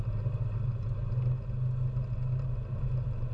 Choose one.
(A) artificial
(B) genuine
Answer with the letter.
B